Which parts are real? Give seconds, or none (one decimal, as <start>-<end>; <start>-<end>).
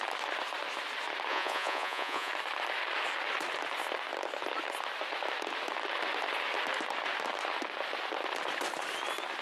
0.0-1.3; 2.3-9.4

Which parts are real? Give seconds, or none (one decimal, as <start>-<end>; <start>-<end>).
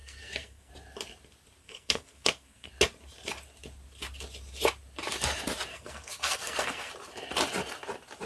0.7-1.6; 2.7-5.7; 6.9-8.3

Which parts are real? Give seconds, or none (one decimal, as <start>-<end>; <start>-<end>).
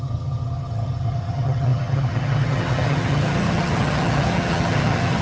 none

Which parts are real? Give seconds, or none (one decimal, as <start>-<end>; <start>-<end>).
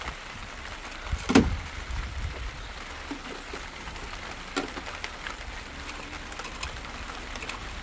0.0-7.8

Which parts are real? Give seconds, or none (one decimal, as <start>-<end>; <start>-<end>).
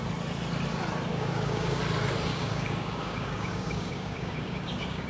0.0-1.1; 1.8-2.3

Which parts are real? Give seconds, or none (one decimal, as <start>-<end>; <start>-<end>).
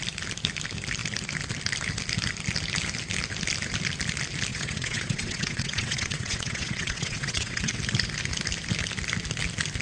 0.0-4.5; 7.8-9.8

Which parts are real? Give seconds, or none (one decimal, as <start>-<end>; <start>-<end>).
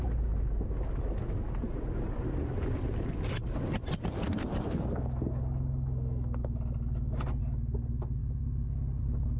0.0-9.4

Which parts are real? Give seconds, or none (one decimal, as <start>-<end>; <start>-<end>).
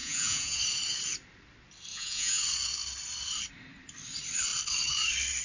0.6-1.9; 2.4-5.4